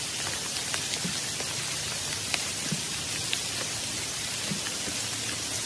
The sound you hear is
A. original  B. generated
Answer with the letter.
B